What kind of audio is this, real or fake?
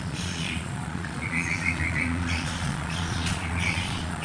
fake